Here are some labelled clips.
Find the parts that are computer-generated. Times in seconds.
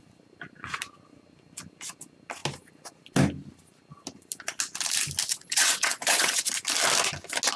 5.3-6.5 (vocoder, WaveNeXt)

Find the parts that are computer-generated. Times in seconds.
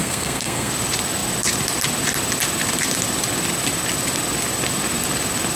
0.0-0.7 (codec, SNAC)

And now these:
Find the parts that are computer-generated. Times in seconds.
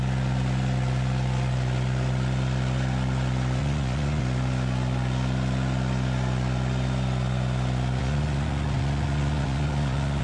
3.6-4.2 (vocoder, Vocos); 8.0-10.2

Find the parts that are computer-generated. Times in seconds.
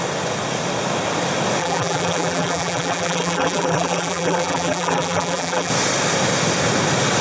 1.6-5.7 (vocoder, BigVGAN v2)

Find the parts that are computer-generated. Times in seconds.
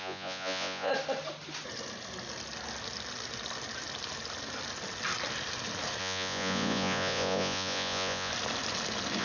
0.0-0.9 (vocoder, Vocos); 6.0-8.3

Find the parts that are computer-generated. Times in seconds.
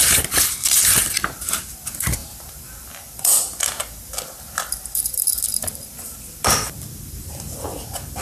0.0-8.2 (vocoder, BigVGAN v2)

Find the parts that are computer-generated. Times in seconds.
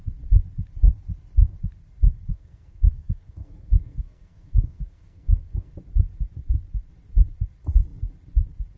2.3-5.7 (codec, SNAC)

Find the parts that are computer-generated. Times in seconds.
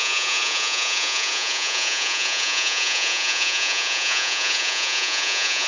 0.0-5.7 (vocoder, Vocos)